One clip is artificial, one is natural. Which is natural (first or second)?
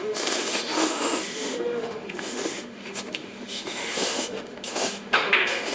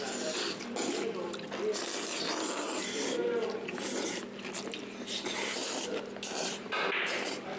second